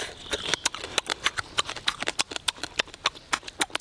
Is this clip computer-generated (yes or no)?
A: no